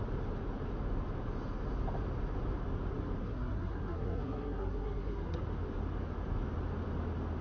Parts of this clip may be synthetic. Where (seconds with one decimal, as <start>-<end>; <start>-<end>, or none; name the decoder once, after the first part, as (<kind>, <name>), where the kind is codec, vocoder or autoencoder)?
3.2-5.4 (codec, SNAC)